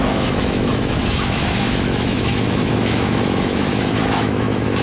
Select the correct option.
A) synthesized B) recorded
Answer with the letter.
A